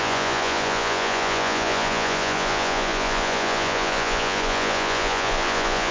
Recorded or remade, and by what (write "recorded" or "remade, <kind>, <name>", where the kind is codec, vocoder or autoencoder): remade, vocoder, Vocos